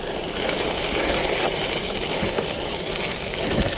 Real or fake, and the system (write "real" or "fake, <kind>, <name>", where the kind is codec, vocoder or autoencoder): real